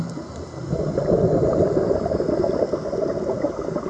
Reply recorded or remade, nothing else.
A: recorded